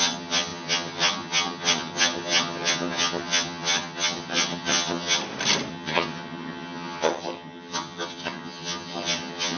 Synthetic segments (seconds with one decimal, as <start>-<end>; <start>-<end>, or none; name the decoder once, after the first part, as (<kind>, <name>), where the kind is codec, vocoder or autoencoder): 0.0-5.2 (vocoder, HiFi-GAN); 5.7-9.6